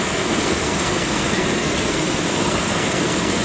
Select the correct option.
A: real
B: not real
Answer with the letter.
B